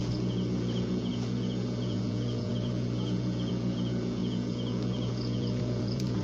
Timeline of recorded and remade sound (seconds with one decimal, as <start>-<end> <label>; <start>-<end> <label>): 0.0-6.2 remade